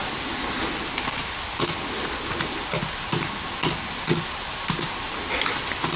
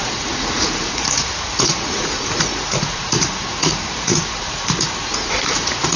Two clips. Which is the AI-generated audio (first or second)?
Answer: second